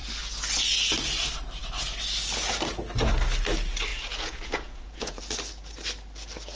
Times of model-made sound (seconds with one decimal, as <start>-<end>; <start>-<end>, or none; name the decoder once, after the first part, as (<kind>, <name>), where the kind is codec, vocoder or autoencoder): 3.9-5.2 (vocoder, Vocos)